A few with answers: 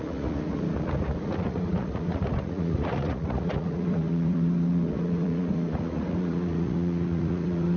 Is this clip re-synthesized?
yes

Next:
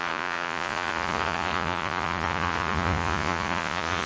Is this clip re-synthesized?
yes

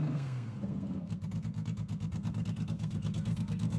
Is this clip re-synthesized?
yes